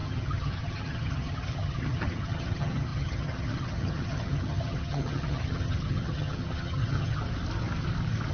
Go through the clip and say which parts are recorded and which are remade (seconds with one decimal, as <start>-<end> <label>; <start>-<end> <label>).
0.0-7.2 remade; 7.2-8.3 recorded